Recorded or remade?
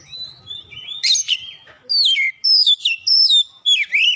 recorded